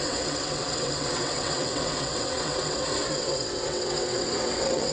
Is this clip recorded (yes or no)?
no